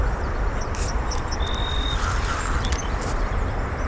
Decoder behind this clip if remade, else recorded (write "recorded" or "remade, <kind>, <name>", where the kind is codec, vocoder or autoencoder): remade, vocoder, BigVGAN v2